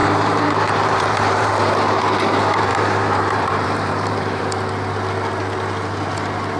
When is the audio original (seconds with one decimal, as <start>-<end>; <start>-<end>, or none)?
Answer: 1.5-2.7; 4.4-6.6